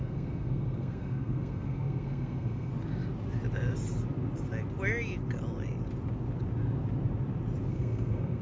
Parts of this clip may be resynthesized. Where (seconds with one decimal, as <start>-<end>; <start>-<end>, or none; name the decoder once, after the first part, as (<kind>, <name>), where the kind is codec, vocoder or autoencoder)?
0.0-2.7 (codec, SNAC); 7.7-8.4